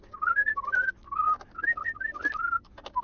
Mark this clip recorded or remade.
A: recorded